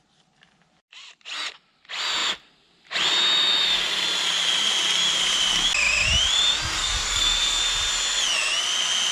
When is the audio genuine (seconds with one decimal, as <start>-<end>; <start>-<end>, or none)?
0.0-6.8; 7.6-9.1